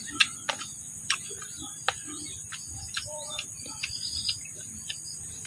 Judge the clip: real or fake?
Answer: real